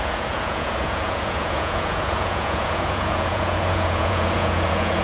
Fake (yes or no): yes